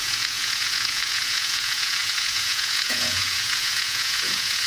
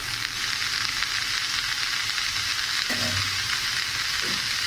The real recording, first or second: second